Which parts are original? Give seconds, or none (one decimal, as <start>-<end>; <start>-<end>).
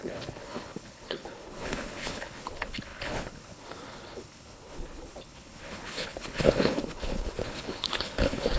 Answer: none